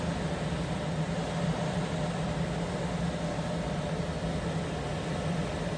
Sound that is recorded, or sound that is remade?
recorded